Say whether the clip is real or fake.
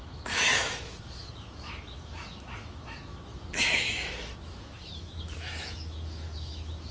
fake